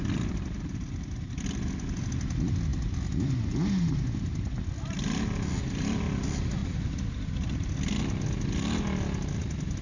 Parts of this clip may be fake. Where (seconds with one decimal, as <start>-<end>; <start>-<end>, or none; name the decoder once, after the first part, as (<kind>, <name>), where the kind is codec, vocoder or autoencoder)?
none